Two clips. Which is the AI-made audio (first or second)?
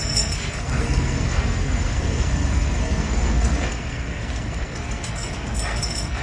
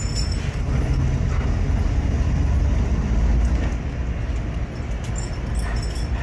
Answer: first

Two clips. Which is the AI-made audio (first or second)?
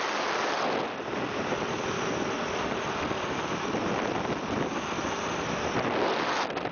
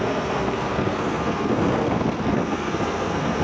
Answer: second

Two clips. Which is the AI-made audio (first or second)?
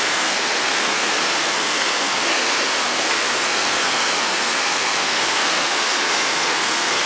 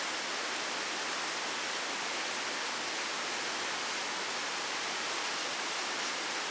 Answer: first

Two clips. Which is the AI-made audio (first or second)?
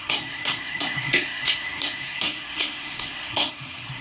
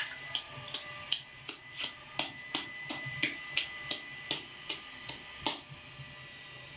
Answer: first